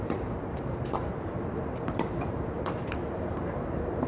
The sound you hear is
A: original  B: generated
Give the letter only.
B